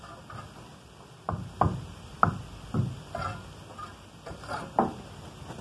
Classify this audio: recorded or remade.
recorded